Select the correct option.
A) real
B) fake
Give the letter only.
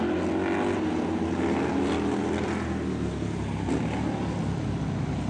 A